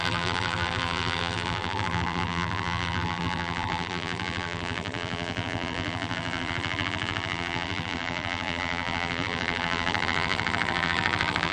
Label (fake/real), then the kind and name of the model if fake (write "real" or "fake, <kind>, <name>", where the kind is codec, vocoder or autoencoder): fake, vocoder, BigVGAN v2